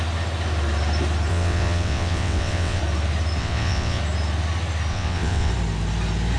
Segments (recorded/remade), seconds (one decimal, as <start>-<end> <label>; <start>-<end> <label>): 0.0-1.3 recorded; 1.3-2.8 remade; 2.8-3.4 recorded; 3.4-4.0 remade; 4.0-4.9 recorded; 4.9-5.5 remade; 5.5-6.4 recorded